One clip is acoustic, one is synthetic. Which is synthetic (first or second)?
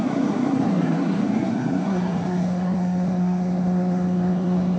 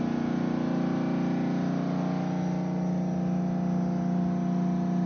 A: first